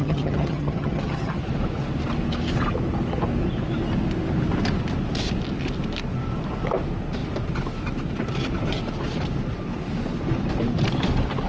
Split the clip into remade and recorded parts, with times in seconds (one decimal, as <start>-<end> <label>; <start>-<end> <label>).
0.0-1.4 remade; 1.4-11.5 recorded